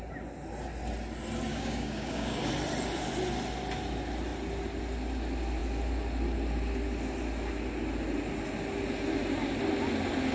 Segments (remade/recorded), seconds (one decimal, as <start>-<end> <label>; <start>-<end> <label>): 0.0-1.5 recorded; 1.5-2.5 remade; 2.5-10.3 recorded